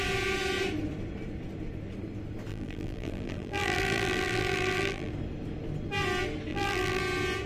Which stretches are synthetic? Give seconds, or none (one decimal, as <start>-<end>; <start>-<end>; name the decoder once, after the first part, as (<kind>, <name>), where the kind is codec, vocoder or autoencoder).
2.5-5.1 (vocoder, BigVGAN v2); 6.5-7.0